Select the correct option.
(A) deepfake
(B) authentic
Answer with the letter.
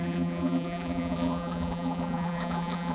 A